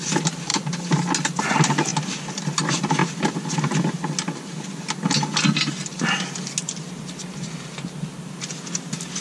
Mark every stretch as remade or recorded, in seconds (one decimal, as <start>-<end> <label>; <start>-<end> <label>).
0.0-9.2 recorded